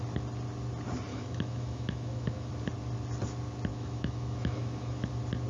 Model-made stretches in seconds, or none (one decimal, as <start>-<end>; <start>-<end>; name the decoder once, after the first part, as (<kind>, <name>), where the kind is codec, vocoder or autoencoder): 1.1-2.5 (autoencoder, DAC-VAE); 3.7-5.1